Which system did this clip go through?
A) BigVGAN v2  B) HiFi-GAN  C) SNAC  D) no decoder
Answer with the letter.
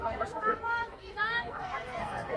C